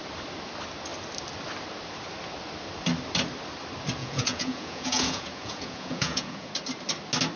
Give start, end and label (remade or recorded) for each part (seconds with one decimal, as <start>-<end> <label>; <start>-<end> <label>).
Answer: 0.0-4.0 recorded; 4.0-6.5 remade; 6.5-7.4 recorded